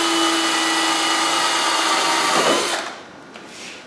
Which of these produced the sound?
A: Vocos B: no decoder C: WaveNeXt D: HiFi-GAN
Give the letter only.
B